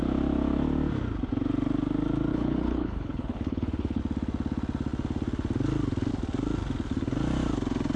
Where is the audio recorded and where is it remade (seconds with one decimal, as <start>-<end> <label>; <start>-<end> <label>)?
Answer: 0.0-2.3 recorded; 2.3-4.0 remade; 4.0-8.0 recorded